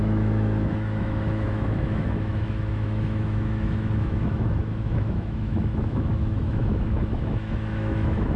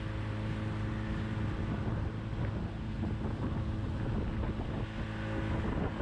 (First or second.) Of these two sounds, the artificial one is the first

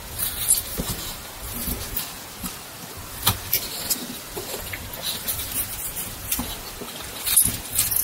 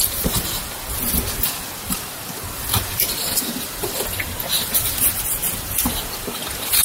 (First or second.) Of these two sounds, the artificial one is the second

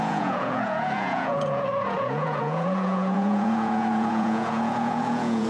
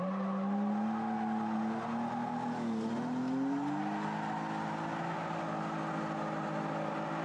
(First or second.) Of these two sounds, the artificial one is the first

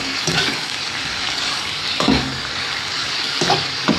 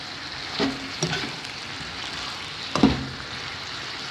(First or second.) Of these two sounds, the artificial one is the first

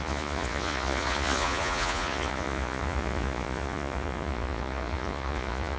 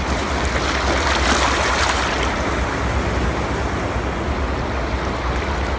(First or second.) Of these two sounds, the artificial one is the first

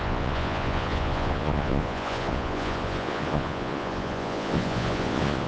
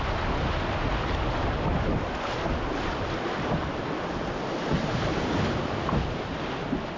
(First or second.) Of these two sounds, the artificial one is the first